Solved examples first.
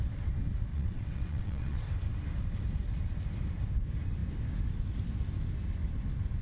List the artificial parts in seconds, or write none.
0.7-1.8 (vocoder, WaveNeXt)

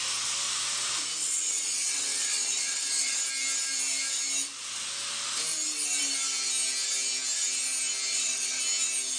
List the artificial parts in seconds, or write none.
1.2-3.2 (vocoder, WaveNeXt); 8.1-8.6

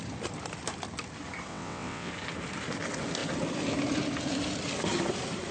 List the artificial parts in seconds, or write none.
1.5-2.1 (vocoder, WaveNeXt)

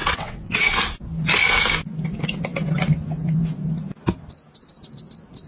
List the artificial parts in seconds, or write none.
0.0-0.8 (vocoder, WaveNeXt)

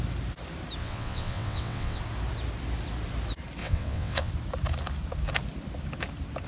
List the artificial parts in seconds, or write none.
0.8-2.0 (vocoder, WaveNeXt); 3.6-4.3

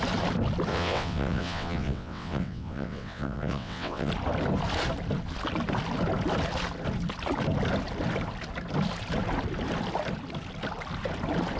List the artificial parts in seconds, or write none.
0.7-4.1 (vocoder, WaveNeXt)